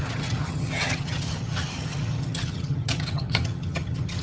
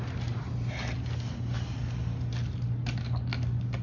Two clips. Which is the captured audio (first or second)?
second